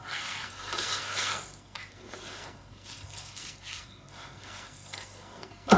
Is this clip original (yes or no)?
no